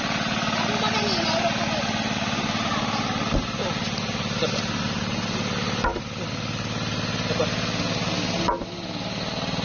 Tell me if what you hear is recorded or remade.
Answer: recorded